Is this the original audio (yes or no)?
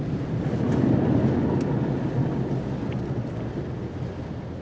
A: yes